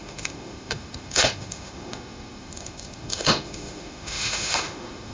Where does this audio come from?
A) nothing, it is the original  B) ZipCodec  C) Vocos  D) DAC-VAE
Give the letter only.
D